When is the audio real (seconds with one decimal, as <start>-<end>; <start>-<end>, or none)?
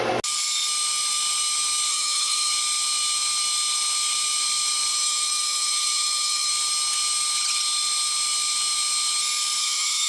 0.0-1.9; 2.5-4.9; 6.5-9.6